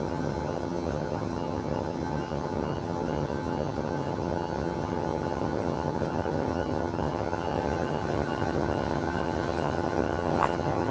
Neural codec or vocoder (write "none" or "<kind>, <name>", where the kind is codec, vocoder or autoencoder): vocoder, HiFi-GAN